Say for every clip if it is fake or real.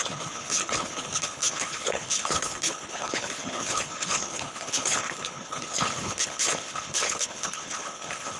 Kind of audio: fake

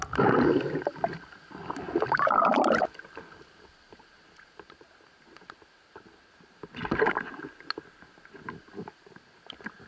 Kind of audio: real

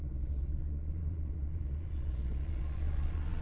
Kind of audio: fake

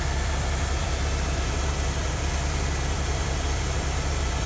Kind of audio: fake